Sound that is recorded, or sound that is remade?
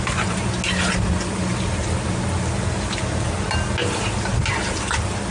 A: recorded